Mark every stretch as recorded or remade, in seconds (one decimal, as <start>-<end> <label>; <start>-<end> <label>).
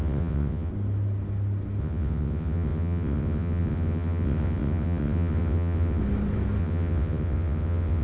0.0-0.7 remade; 0.7-1.8 recorded; 1.8-6.0 remade; 6.0-6.6 recorded; 6.6-8.0 remade